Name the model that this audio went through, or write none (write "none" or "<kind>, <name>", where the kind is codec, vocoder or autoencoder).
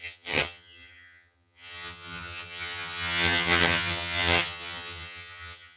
vocoder, HiFi-GAN